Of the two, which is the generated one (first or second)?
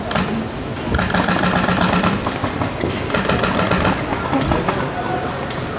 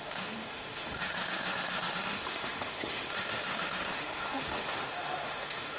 second